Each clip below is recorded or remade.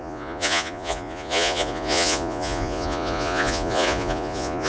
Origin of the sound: remade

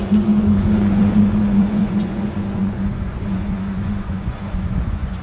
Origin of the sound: remade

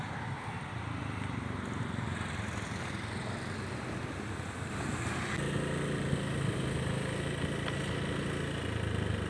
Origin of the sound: recorded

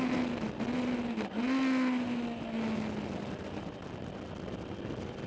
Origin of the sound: recorded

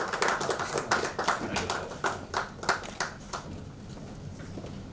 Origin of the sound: recorded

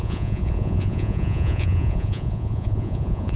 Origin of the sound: remade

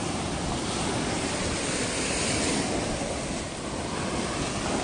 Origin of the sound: recorded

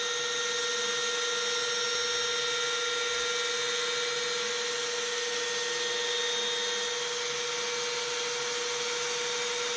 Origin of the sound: recorded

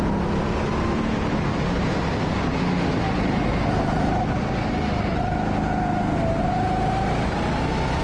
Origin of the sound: recorded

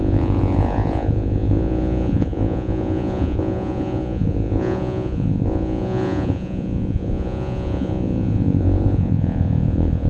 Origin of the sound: remade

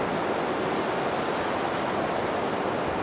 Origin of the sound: recorded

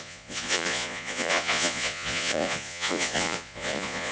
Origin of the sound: remade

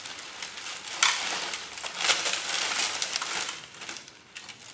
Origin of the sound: recorded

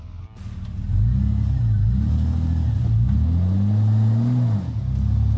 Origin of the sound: recorded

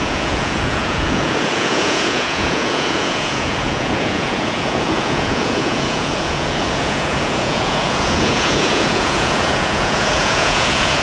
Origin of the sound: remade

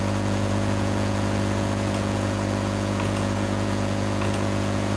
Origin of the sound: remade